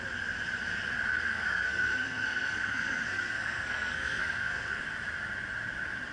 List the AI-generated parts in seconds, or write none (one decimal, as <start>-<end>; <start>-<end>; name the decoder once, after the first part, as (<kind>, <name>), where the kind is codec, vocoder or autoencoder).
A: 1.1-4.8 (codec, SNAC)